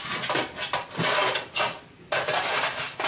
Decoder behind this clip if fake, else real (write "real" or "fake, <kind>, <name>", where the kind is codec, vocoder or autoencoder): real